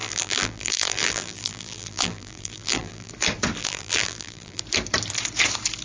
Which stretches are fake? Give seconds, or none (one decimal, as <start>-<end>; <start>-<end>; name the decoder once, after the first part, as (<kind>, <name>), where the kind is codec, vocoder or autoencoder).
0.0-3.1 (vocoder, BigVGAN v2); 3.6-4.6

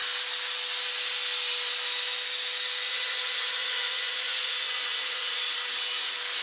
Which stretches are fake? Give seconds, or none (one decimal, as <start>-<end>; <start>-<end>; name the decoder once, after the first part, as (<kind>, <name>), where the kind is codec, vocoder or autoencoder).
2.9-5.4 (vocoder, Vocos)

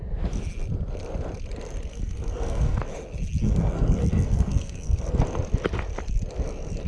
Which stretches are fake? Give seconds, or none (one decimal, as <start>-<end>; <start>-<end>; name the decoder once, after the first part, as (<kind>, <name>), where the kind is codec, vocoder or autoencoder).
1.9-2.8 (codec, SNAC); 3.4-5.2

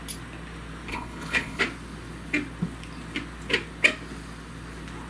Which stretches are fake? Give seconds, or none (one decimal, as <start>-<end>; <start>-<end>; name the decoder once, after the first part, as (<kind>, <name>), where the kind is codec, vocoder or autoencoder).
0.9-1.6 (codec, HILCodec)

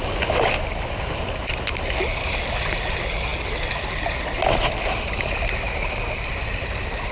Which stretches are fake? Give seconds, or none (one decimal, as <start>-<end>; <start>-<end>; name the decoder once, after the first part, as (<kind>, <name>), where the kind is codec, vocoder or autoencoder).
none

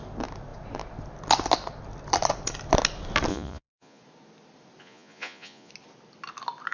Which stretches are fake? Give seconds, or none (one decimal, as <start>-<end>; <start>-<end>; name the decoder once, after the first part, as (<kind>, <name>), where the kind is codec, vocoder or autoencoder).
3.3-4.0 (vocoder, Vocos); 4.8-5.7

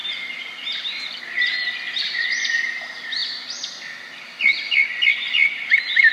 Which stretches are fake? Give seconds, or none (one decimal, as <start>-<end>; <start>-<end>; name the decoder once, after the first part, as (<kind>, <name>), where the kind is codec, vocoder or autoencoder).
0.0-3.2 (vocoder, BigVGAN v2); 3.7-6.1